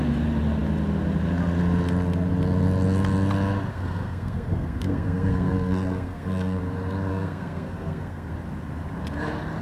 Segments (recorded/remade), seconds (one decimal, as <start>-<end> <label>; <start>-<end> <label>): 0.0-3.7 recorded; 3.7-6.6 remade; 6.6-7.1 recorded; 7.1-8.3 remade; 8.3-9.6 recorded